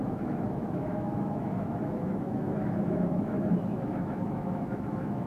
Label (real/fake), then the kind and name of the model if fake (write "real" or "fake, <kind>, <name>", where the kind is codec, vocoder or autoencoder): fake, autoencoder, DAC-VAE